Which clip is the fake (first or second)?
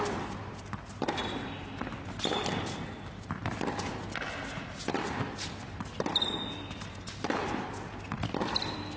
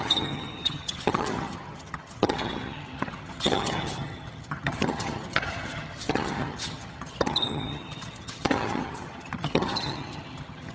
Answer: second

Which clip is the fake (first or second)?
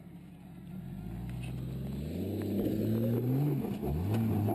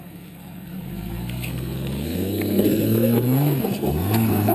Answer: second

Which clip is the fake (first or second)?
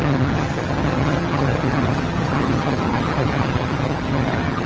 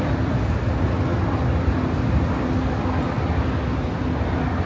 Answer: first